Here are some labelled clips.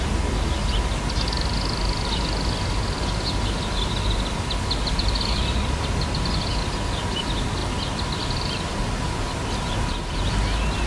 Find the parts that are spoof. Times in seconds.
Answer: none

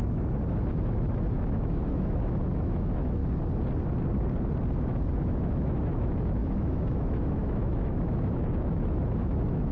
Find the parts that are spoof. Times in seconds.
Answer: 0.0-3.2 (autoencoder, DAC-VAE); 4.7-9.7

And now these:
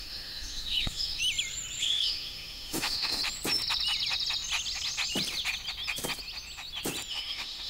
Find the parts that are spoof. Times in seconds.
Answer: 0.0-1.2 (autoencoder, DAC-VAE); 1.8-3.2; 7.1-7.7

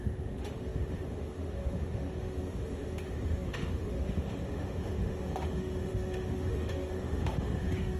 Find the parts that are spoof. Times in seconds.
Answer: 0.0-8.0 (autoencoder, DAC-VAE)